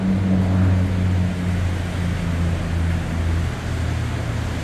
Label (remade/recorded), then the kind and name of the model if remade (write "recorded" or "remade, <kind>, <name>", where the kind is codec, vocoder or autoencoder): recorded